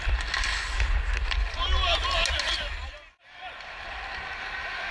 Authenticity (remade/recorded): recorded